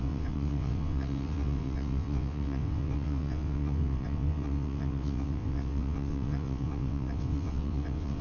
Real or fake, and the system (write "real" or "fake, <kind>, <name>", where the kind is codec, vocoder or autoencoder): fake, vocoder, WaveNeXt